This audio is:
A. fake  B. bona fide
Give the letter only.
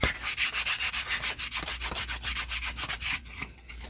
B